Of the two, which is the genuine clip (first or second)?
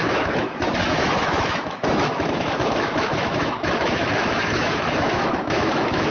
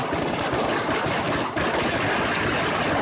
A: second